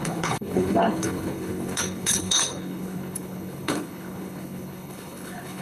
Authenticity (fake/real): fake